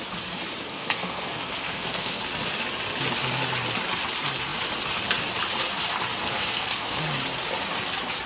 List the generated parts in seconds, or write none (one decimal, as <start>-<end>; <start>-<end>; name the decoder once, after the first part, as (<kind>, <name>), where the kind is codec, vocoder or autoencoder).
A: 0.7-2.2 (codec, SNAC); 6.2-7.0